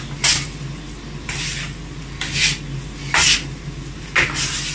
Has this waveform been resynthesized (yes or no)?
no